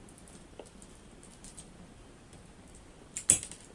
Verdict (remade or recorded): recorded